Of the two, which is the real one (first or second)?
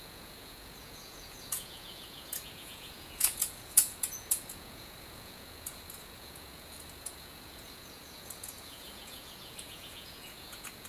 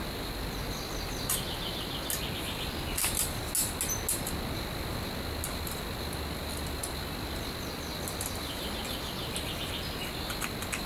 second